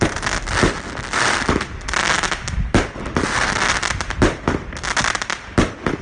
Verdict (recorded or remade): recorded